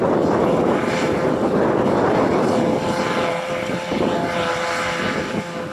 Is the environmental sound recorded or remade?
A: recorded